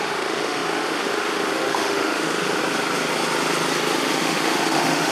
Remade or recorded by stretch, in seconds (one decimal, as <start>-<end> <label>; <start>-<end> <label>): 0.0-2.6 remade; 2.6-4.0 recorded; 4.0-5.1 remade